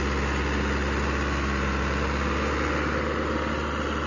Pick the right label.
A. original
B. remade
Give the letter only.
A